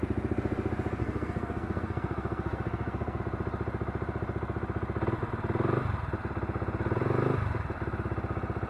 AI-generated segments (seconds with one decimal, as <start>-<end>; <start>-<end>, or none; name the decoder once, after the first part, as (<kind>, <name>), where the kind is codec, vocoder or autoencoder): 1.0-3.2 (codec, SNAC)